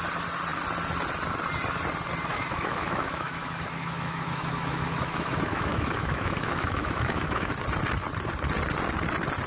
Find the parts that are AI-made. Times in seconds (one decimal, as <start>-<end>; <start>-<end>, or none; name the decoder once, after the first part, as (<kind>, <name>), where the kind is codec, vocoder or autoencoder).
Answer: 2.3-7.5 (autoencoder, DAC-VAE)